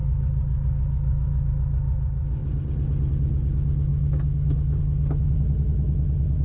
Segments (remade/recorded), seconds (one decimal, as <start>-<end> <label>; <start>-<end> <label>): 0.0-1.5 remade; 1.5-3.9 recorded; 3.9-4.8 remade; 4.8-6.4 recorded